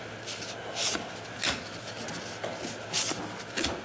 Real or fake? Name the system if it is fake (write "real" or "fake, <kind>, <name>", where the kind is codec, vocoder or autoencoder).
real